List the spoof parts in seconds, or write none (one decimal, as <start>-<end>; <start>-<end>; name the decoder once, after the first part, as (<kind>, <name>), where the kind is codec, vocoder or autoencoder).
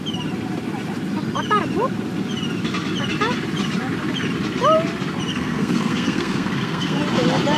5.3-7.0 (codec, SNAC)